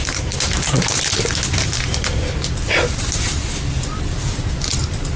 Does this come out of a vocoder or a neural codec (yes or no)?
no